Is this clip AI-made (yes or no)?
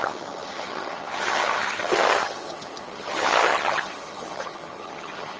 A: yes